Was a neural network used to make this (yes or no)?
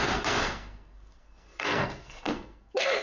yes